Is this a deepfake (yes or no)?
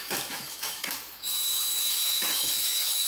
yes